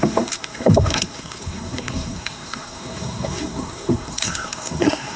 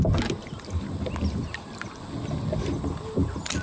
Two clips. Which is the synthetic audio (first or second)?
first